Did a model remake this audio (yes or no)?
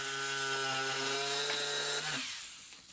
no